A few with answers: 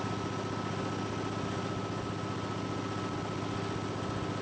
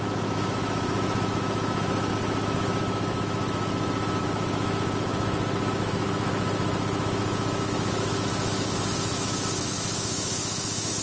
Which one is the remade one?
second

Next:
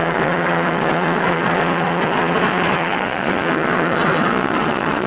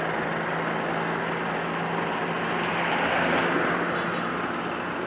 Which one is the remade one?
first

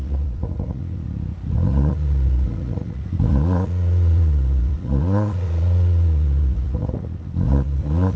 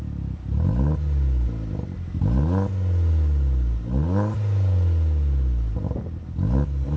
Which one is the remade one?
first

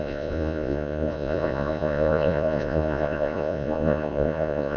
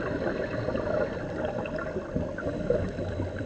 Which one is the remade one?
first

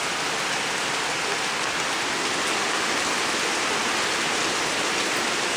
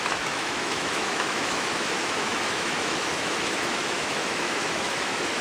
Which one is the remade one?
second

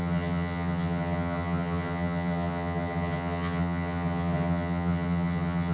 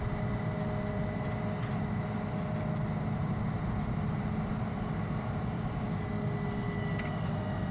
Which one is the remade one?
first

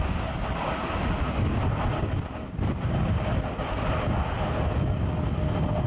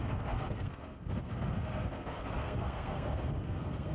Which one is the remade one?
second